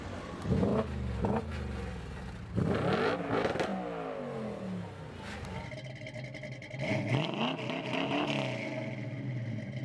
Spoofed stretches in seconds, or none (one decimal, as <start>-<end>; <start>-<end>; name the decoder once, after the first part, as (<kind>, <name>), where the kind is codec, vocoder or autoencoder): none